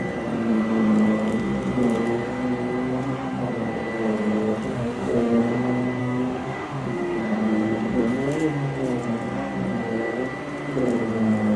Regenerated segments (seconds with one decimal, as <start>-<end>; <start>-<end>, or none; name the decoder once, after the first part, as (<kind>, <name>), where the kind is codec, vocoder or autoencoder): 4.7-5.4 (autoencoder, DAC-VAE); 6.0-7.2